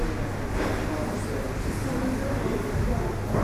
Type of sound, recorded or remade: recorded